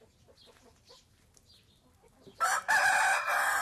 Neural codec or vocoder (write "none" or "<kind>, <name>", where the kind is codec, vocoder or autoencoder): none